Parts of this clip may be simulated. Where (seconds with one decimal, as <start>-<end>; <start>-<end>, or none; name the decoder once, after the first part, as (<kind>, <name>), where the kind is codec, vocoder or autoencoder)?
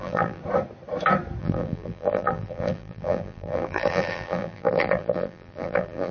0.0-0.4 (vocoder, BigVGAN v2); 1.4-6.1